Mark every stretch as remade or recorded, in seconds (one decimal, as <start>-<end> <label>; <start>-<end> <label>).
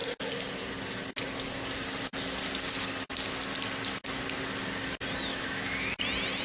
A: 0.0-5.3 recorded; 5.3-6.0 remade; 6.0-6.4 recorded